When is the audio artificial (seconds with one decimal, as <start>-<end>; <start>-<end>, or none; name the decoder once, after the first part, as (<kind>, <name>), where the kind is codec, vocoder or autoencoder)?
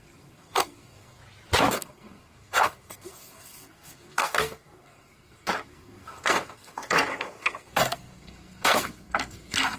0.0-1.2 (codec, SNAC); 1.7-9.8